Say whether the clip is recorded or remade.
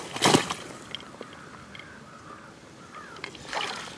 recorded